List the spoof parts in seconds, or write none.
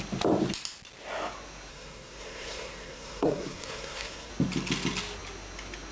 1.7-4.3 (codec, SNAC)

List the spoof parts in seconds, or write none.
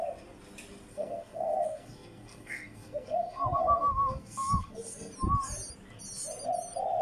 0.9-5.1 (codec, SNAC)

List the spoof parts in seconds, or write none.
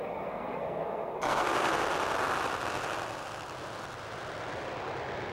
0.0-1.7 (codec, SNAC)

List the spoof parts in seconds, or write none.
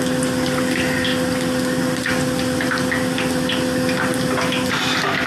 none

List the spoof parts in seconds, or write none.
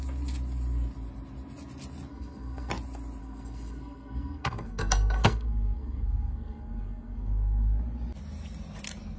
2.1-2.7 (codec, SNAC); 3.2-7.8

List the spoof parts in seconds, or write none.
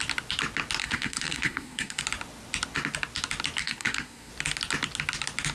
0.8-2.0 (codec, SNAC); 3.6-4.3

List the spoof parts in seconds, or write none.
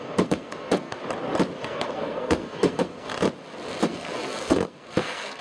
0.0-1.0 (codec, SNAC); 1.6-3.1; 3.8-5.4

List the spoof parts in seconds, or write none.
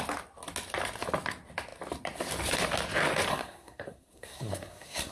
3.3-5.1 (codec, SNAC)